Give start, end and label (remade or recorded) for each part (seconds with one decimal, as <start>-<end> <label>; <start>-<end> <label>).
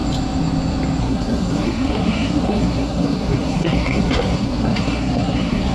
0.0-1.0 recorded; 1.0-5.7 remade